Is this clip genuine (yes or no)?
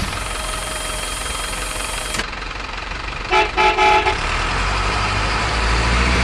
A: no